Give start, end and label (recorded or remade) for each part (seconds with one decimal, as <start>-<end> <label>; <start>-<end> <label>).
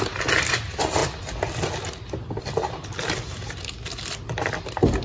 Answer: 0.0-5.0 recorded